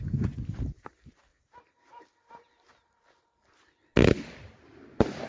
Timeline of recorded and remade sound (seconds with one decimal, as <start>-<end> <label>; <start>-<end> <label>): 0.0-5.3 recorded